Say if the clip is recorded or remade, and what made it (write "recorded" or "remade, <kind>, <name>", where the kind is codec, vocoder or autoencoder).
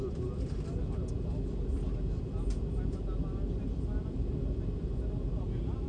recorded